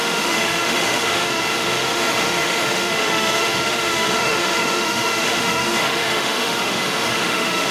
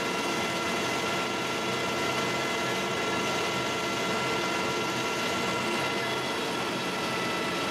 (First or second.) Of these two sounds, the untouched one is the second